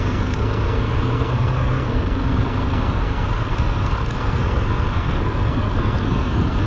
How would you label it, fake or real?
fake